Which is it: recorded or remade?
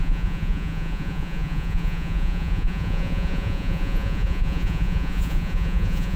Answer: remade